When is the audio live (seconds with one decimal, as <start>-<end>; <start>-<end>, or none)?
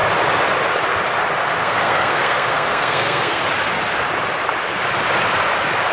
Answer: 0.0-1.6; 3.4-5.9